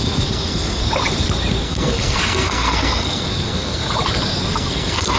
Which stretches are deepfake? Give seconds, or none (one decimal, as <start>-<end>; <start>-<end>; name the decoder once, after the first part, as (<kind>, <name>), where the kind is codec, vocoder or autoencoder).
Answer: 0.0-0.8 (codec, SNAC); 1.6-3.8; 4.4-5.2